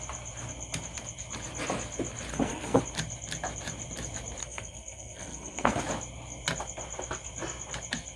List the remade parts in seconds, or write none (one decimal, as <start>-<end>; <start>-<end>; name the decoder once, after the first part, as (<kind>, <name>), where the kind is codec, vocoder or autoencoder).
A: 2.3-2.8 (codec, SNAC); 4.4-5.8